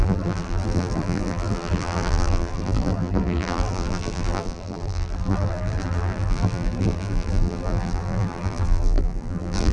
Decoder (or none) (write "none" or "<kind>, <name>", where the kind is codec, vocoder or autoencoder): vocoder, BigVGAN v2